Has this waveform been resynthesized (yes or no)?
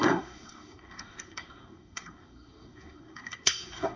yes